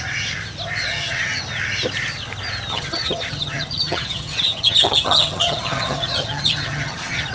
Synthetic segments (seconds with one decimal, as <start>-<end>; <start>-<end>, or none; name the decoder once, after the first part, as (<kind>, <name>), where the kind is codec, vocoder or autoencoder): 0.9-1.4 (vocoder, HiFi-GAN); 2.7-7.3